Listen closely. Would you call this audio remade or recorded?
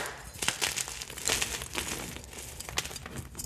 recorded